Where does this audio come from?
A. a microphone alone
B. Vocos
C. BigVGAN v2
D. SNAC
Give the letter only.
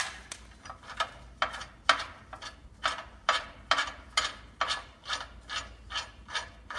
A